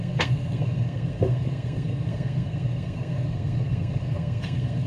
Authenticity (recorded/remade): remade